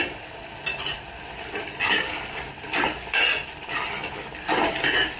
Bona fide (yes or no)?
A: yes